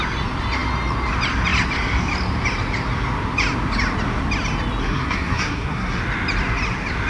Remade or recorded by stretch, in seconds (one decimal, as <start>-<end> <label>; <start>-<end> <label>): 0.0-4.8 recorded; 4.8-6.0 remade; 6.0-7.1 recorded